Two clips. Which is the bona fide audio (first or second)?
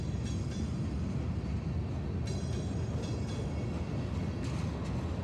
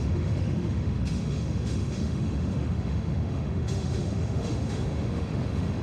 first